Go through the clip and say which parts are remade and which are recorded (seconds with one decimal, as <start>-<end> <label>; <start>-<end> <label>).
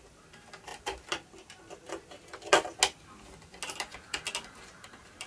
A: 0.0-5.3 recorded